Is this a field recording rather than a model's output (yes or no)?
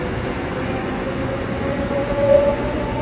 no